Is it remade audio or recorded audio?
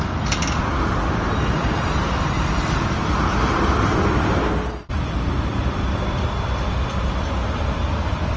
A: recorded